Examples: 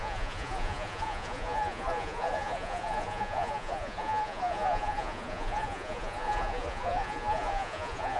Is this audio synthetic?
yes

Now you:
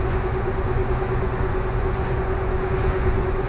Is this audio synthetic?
yes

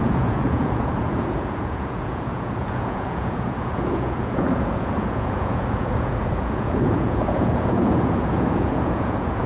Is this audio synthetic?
yes